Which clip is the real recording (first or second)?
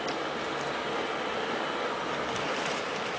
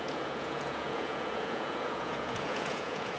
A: first